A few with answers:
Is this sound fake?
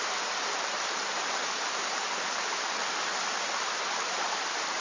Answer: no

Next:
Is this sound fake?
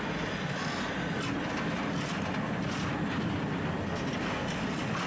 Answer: no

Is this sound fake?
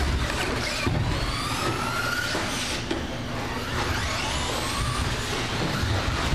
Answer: no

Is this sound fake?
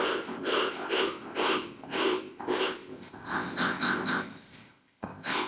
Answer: yes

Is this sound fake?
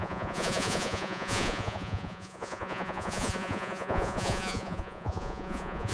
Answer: yes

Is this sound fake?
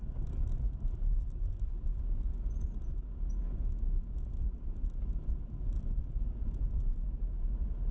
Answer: no